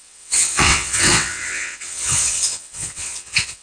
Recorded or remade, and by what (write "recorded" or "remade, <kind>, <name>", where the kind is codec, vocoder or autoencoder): remade, vocoder, WaveNeXt